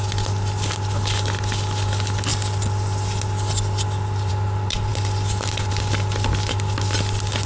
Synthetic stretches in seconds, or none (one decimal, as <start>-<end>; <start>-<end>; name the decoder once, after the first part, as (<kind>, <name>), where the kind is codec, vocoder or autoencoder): none